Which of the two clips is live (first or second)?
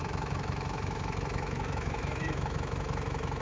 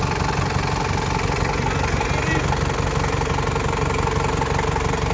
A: second